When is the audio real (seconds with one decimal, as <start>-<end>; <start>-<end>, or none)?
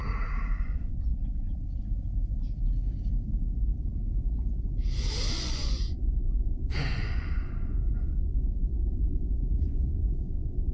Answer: 0.0-0.6; 1.1-5.3